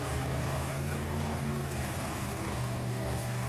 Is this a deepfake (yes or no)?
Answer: yes